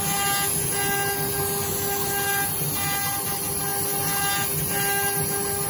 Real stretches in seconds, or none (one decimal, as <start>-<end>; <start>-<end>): 0.0-5.7